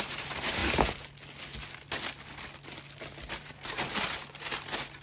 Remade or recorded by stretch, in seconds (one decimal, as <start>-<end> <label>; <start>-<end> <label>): 0.0-0.6 remade; 0.6-3.3 recorded; 3.3-5.0 remade